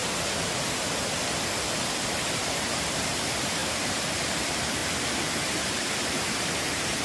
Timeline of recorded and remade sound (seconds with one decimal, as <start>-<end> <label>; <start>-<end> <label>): 0.0-2.0 recorded; 2.0-4.8 remade; 4.8-5.9 recorded; 5.9-7.0 remade